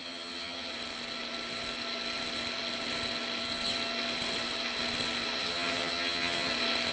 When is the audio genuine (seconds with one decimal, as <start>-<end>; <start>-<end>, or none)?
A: 0.7-5.4; 6.5-6.9